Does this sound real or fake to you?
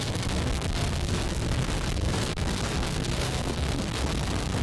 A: fake